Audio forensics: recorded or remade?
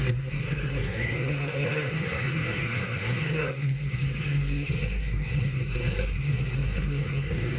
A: remade